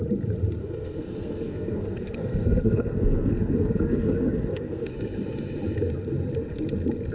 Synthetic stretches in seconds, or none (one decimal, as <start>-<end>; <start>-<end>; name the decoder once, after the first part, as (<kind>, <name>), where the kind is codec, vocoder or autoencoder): 0.6-4.9 (codec, SNAC)